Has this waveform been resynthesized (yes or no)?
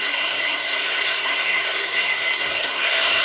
yes